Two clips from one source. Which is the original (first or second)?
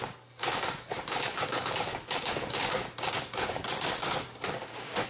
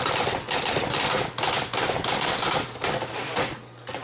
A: second